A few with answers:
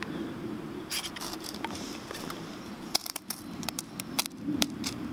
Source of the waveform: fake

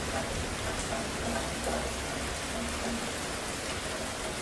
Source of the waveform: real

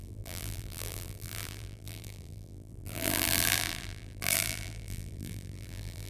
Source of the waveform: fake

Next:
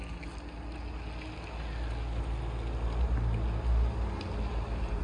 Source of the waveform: real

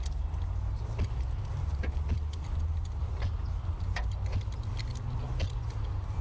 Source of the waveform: real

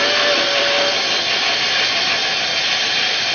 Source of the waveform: fake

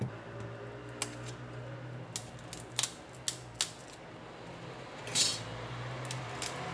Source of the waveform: real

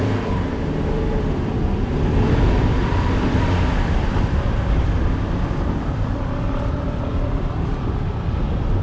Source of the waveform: fake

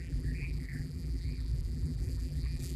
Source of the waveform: fake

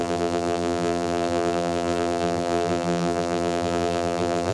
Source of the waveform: fake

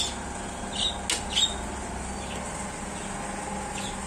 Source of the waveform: real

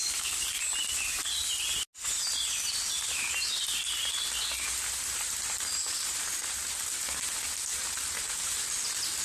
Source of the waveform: real